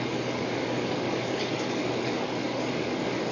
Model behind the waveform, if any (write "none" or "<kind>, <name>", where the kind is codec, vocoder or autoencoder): codec, DAC